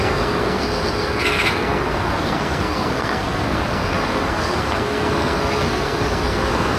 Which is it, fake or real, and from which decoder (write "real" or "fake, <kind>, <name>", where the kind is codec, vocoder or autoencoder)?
fake, codec, SNAC